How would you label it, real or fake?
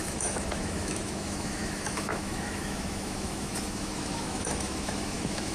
fake